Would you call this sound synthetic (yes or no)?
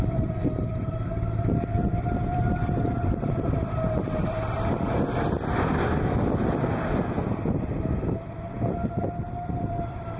yes